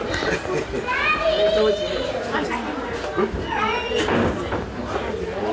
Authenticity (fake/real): real